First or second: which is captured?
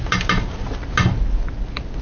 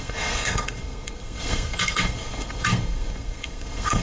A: first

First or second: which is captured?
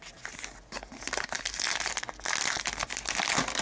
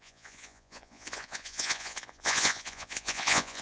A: first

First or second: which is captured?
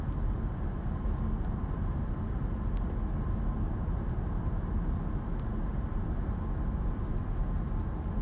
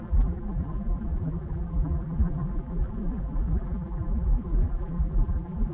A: first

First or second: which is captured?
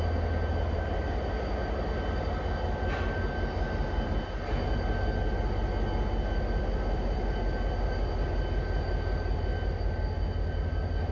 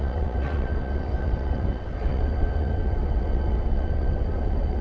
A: first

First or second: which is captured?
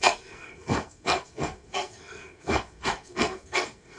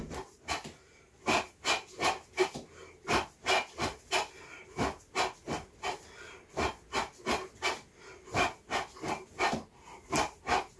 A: second